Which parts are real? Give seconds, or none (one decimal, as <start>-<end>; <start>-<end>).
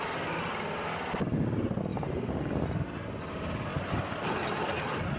0.0-1.9; 2.8-5.2